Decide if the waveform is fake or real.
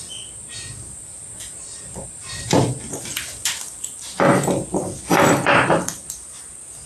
fake